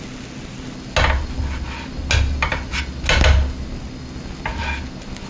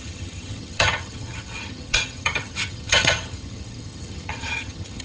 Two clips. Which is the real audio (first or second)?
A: first